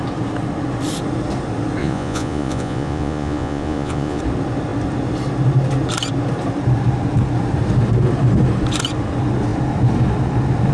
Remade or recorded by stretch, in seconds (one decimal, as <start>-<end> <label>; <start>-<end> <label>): 0.0-1.8 recorded; 1.8-4.2 remade; 4.2-10.7 recorded

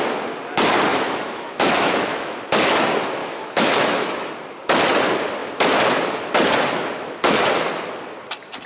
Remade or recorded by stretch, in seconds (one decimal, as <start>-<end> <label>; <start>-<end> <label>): 0.0-0.9 recorded; 0.9-2.5 remade; 2.5-3.2 recorded; 3.2-4.3 remade; 4.3-8.7 recorded

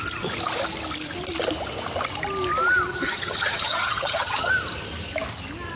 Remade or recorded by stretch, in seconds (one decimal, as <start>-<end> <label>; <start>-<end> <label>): 0.0-2.9 recorded; 2.9-4.5 remade; 4.5-5.8 recorded

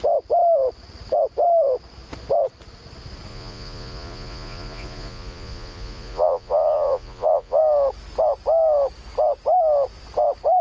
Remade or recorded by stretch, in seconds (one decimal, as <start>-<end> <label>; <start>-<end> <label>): 0.0-3.3 recorded; 3.3-7.6 remade; 7.6-10.6 recorded

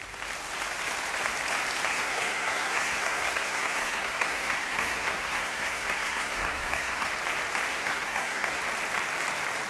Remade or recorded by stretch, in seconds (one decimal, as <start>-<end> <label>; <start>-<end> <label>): 0.0-1.9 recorded; 1.9-7.1 remade; 7.1-7.7 recorded; 7.7-8.6 remade; 8.6-9.7 recorded

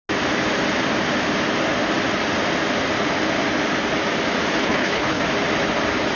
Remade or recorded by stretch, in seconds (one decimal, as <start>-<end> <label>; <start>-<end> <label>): 0.0-4.6 recorded; 4.6-5.2 remade; 5.2-6.2 recorded

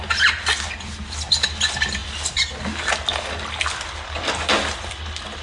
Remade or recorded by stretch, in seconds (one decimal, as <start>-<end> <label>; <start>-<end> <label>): 0.0-5.4 recorded